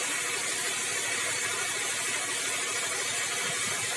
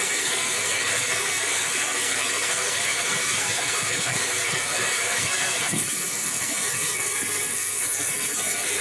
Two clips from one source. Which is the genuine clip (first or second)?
first